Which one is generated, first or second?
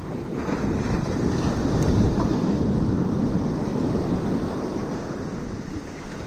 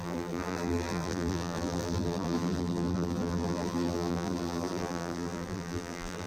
second